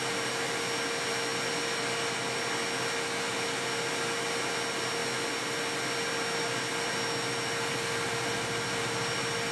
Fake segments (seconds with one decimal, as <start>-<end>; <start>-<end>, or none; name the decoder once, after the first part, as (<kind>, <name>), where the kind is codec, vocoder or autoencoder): none